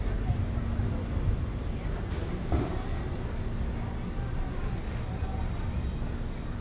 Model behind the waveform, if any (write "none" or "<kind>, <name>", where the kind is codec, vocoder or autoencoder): none